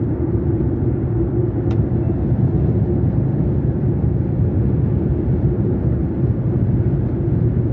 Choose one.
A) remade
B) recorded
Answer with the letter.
B